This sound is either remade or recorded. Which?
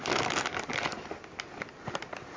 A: recorded